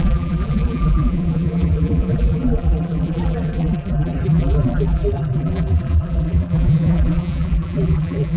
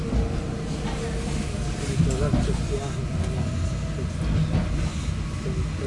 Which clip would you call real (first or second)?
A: second